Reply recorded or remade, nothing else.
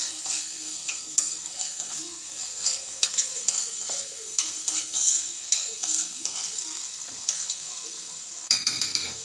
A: remade